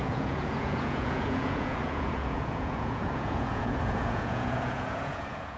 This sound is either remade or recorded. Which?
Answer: remade